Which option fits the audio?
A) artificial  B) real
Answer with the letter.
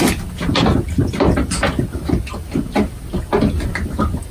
B